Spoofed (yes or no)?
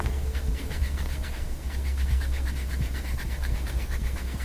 yes